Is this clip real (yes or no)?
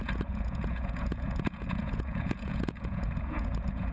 no